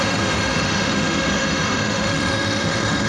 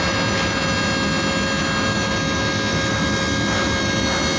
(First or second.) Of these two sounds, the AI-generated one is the first